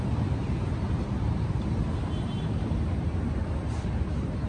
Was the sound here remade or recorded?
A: remade